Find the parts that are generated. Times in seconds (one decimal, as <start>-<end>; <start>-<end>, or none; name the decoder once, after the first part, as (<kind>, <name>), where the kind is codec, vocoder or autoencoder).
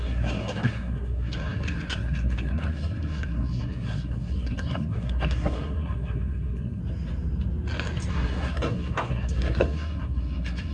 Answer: 0.0-6.8 (codec, SNAC); 8.1-10.7